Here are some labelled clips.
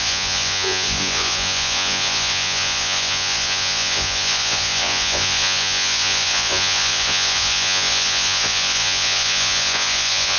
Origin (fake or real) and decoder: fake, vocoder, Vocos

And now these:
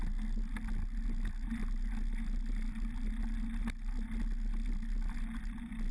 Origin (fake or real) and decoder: real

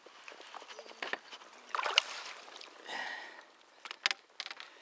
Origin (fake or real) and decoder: real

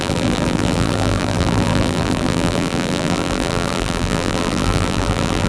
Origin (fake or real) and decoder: fake, vocoder, BigVGAN v2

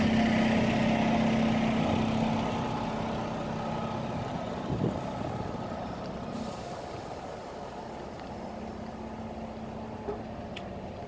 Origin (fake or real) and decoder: real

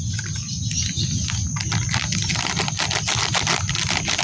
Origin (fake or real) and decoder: real